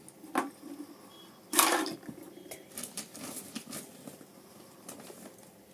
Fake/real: real